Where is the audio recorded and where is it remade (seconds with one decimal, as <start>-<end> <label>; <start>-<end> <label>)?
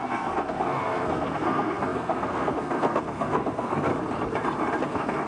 0.0-3.9 remade; 3.9-4.8 recorded; 4.8-5.3 remade